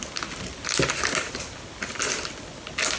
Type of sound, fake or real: real